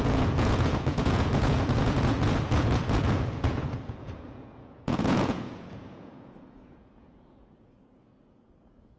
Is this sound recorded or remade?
remade